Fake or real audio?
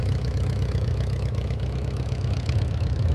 fake